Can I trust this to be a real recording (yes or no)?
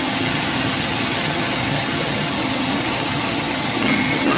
no